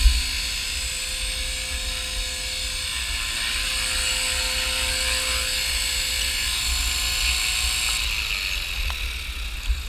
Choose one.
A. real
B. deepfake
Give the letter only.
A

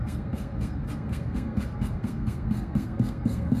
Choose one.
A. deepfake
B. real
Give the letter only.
A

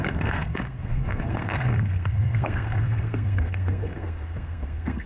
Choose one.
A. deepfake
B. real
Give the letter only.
A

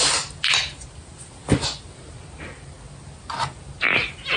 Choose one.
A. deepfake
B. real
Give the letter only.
B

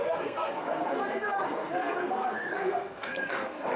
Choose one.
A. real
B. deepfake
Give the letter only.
B